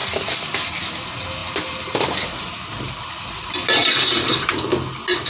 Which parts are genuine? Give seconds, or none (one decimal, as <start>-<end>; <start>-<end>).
0.0-3.8; 4.7-5.3